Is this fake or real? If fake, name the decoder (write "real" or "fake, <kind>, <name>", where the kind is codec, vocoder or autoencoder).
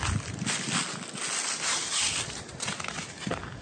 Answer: real